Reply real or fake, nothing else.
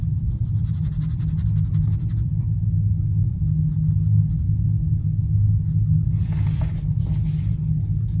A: real